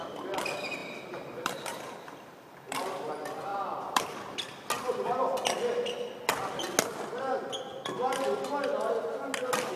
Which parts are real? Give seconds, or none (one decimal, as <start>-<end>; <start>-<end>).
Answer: 0.0-0.8; 3.1-3.5; 4.6-9.8